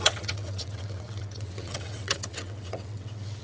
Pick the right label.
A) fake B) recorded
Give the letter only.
A